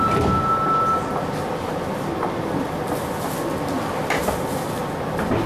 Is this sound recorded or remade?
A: recorded